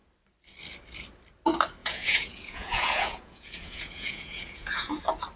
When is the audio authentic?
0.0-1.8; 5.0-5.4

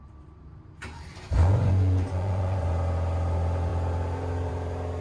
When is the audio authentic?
0.0-1.4; 2.7-5.0

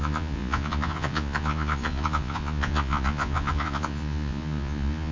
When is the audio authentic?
none

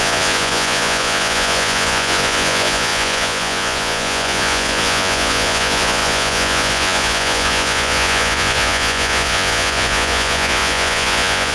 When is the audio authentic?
none

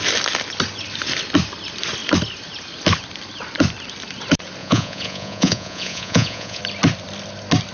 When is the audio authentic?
0.0-4.6; 6.6-7.7

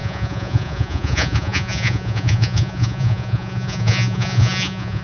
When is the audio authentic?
none

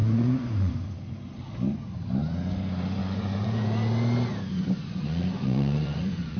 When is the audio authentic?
0.7-3.0; 3.6-4.5

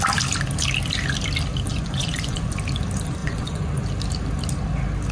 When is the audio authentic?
0.0-1.7; 2.5-3.2; 3.8-5.1